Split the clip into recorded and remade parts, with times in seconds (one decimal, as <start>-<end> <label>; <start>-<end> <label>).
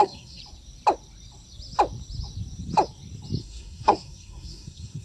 0.0-0.4 remade; 0.4-3.4 recorded; 3.4-5.0 remade